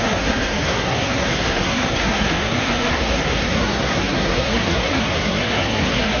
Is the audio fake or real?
fake